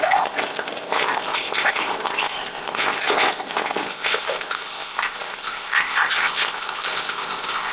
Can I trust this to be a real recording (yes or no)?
no